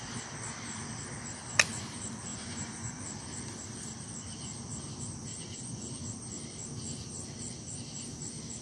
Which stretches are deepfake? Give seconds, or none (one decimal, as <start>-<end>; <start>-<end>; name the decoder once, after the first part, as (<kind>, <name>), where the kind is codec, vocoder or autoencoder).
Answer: 2.3-3.0 (vocoder, Vocos); 5.3-6.0